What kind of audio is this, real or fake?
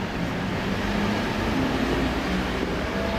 real